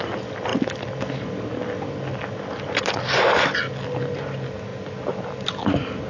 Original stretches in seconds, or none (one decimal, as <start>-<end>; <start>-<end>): 0.0-6.1